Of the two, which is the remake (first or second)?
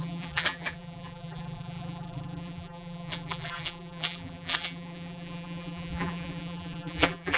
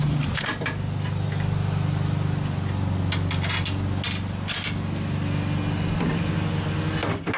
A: first